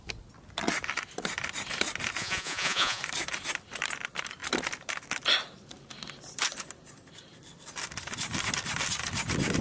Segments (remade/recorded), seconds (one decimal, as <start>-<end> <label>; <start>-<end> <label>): 0.0-2.2 recorded; 2.2-3.0 remade; 3.0-9.6 recorded

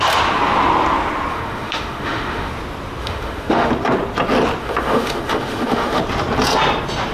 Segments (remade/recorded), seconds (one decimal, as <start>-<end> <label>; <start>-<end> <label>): 0.0-1.3 recorded; 1.3-2.5 remade; 2.5-3.0 recorded; 3.0-3.7 remade; 3.7-4.6 recorded; 4.6-6.0 remade; 6.0-7.1 recorded

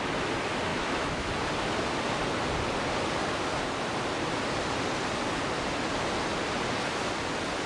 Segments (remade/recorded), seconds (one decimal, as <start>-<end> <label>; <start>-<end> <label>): 0.0-0.7 recorded; 0.7-1.3 remade; 1.3-7.7 recorded

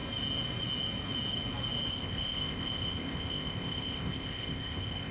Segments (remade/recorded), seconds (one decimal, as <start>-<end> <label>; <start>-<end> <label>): 0.0-1.9 recorded; 1.9-5.1 remade